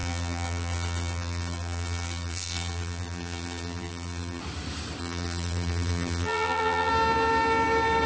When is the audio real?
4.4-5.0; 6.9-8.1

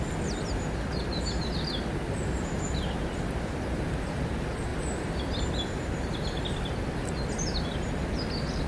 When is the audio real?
0.0-8.7